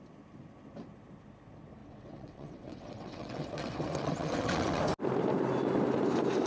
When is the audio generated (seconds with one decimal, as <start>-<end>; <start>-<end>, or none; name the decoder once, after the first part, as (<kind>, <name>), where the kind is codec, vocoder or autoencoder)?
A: 1.8-4.8 (vocoder, WaveNeXt)